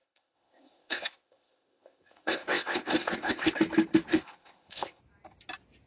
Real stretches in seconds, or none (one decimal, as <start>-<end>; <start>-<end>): 3.5-4.1; 5.0-5.9